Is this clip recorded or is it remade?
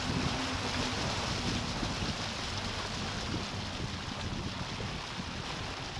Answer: recorded